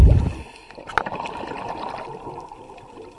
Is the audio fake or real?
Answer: real